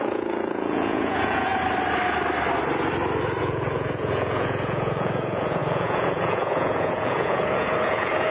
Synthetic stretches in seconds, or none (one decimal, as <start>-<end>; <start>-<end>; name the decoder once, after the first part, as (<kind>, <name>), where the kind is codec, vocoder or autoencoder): 0.0-1.5 (vocoder, Vocos); 3.4-8.3